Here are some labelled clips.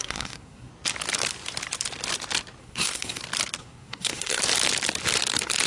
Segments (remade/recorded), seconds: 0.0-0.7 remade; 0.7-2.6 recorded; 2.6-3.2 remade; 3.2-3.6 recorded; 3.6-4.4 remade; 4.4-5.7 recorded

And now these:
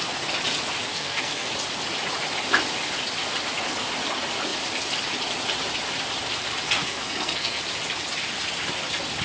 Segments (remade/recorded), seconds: 0.0-0.9 recorded; 0.9-1.5 remade; 1.5-6.8 recorded; 6.8-7.6 remade; 7.6-9.2 recorded